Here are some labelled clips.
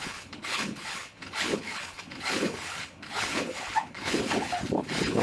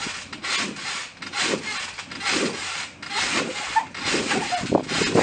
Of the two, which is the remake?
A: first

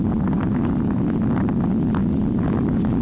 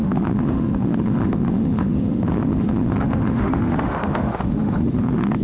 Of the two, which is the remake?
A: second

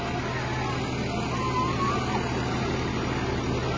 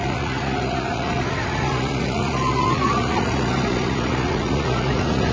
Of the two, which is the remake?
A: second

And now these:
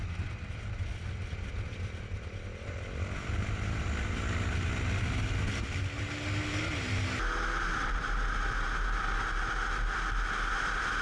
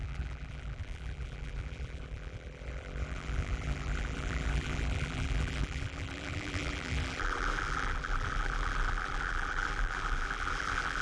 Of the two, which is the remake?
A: second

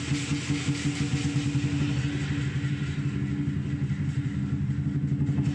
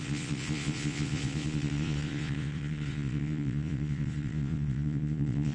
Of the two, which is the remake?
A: second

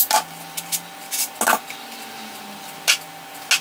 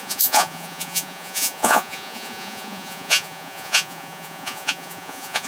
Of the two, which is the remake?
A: second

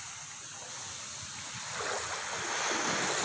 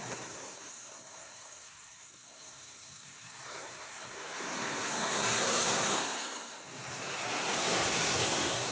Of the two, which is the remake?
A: second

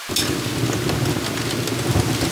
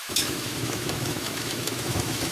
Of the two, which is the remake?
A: second